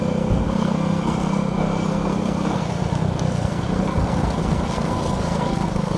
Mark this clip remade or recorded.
remade